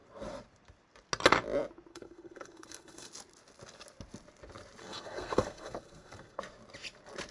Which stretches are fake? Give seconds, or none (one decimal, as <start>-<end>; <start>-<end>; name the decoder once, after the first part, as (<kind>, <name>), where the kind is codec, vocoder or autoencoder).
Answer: 1.9-3.1 (codec, SNAC); 4.8-6.4